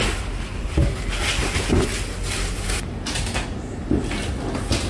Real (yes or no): yes